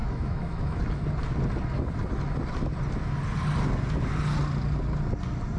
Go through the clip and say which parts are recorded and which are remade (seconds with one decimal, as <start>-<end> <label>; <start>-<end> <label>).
0.0-0.8 remade; 0.8-5.6 recorded